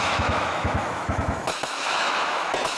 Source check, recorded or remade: remade